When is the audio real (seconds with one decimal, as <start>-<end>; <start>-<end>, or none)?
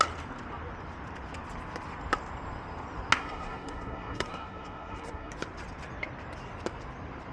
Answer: 0.0-3.2; 5.3-7.3